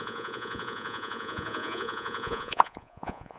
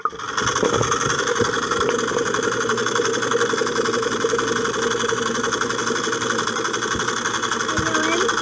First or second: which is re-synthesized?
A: first